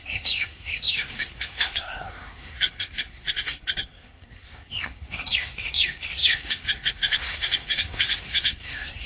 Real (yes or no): no